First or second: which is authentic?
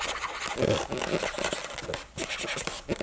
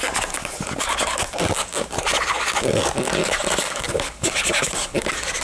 first